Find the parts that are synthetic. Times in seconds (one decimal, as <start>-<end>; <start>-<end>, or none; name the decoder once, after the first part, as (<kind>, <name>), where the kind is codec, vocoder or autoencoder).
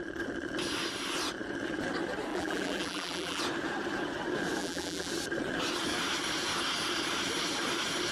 2.3-3.4 (vocoder, BigVGAN v2); 4.6-5.1